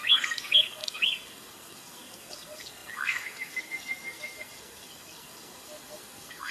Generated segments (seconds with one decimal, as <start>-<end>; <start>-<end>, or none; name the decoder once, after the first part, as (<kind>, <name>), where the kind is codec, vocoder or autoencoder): 0.0-6.5 (codec, SNAC)